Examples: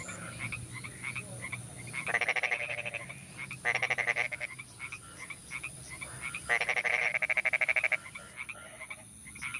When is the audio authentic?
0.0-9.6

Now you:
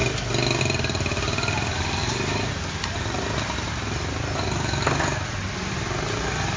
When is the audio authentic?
0.0-6.6

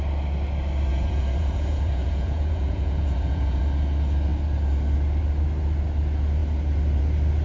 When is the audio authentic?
0.0-0.9; 3.6-7.4